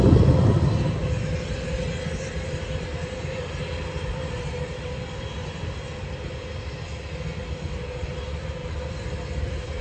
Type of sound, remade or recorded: recorded